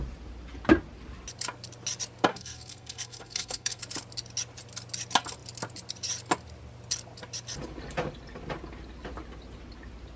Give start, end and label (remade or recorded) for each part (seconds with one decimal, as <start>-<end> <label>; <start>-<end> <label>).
0.0-2.3 recorded; 2.3-3.8 remade; 3.8-10.2 recorded